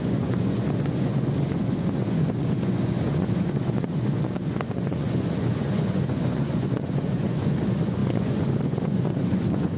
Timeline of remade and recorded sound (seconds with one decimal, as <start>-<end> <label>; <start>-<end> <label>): 0.0-9.8 remade